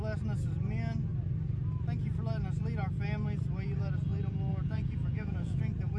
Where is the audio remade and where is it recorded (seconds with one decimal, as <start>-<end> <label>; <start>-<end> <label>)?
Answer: 0.0-4.5 recorded; 4.5-5.6 remade; 5.6-6.0 recorded